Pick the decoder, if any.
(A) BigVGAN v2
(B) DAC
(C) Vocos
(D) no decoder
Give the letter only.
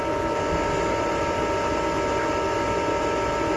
D